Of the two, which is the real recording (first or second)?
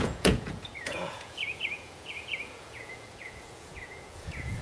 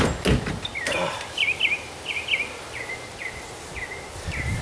second